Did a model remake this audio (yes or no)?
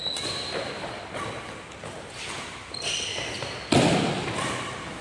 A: no